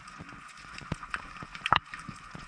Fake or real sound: fake